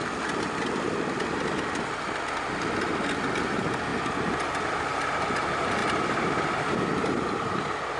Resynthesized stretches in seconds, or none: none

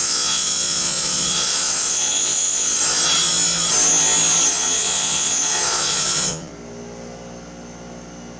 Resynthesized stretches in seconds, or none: 0.0-2.8; 4.5-6.5

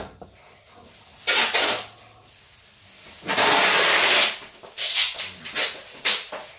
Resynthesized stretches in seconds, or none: none

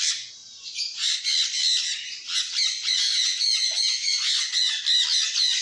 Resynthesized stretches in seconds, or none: 0.4-1.2; 2.8-4.7

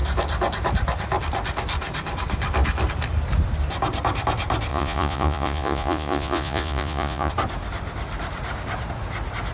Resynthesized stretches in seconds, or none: 4.7-7.3

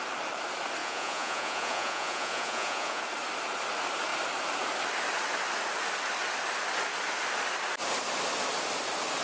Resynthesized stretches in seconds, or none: 0.8-3.0

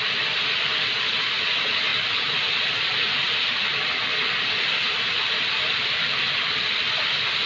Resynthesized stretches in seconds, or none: none

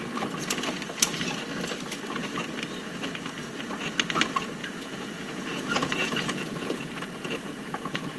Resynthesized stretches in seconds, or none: 4.6-8.2